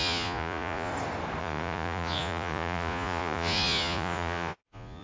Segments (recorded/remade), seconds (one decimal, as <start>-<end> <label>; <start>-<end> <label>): 0.0-0.9 remade; 0.9-1.4 recorded; 1.4-5.0 remade

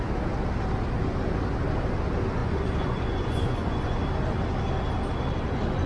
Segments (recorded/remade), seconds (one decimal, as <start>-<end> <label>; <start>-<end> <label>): 0.0-2.4 recorded; 2.4-4.0 remade; 4.0-5.9 recorded

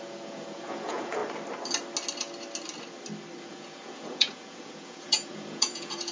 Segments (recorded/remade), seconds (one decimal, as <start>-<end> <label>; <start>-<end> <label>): 0.0-1.2 remade; 1.2-3.4 recorded; 3.4-6.1 remade

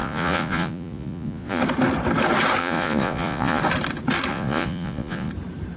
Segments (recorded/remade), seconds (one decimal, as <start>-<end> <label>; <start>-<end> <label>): 0.0-1.6 remade; 1.6-2.6 recorded; 2.6-3.6 remade; 3.6-4.3 recorded; 4.3-5.3 remade; 5.3-5.8 recorded

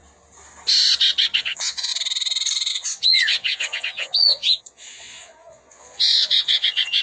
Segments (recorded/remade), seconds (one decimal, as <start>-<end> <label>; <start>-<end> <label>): 0.0-1.4 recorded; 1.4-1.9 remade; 1.9-2.7 recorded; 2.7-7.0 remade

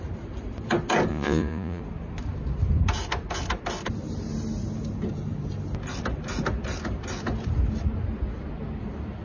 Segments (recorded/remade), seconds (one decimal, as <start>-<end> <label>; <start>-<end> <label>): 0.0-1.1 recorded; 1.1-1.8 remade; 1.8-9.2 recorded